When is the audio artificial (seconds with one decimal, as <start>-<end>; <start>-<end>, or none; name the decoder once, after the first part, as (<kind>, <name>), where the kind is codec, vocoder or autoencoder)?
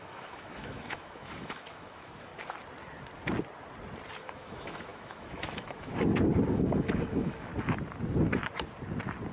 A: 0.0-2.3 (autoencoder, DAC-VAE); 4.2-5.9; 6.5-7.5